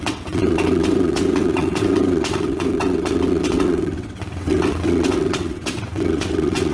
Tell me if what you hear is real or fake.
fake